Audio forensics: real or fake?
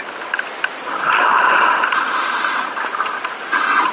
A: real